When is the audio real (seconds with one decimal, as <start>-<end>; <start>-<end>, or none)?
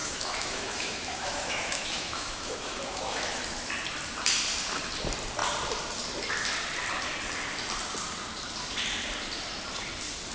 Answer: 3.4-10.3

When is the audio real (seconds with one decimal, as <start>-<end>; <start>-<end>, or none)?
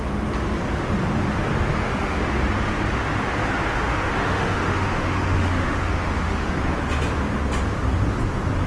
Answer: 0.0-1.7; 2.2-3.9; 6.6-8.7